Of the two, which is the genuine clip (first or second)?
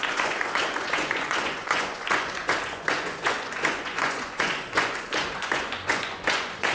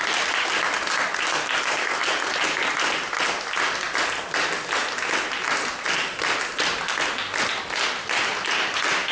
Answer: second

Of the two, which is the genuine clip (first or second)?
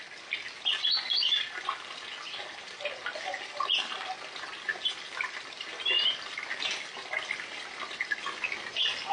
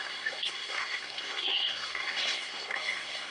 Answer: first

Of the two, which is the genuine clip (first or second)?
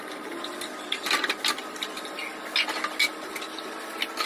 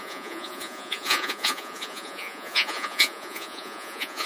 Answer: first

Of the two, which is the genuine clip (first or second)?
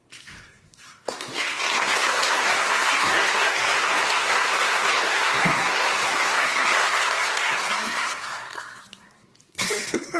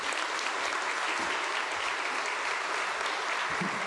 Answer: second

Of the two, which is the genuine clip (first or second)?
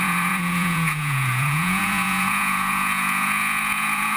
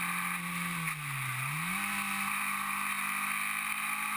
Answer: second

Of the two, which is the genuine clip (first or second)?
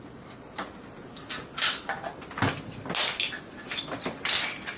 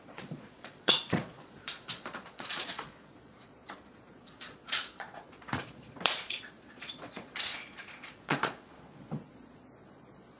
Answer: first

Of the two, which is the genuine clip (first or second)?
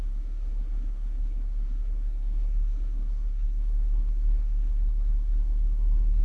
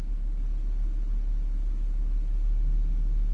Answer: second